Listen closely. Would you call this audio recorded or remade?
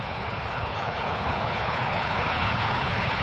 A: remade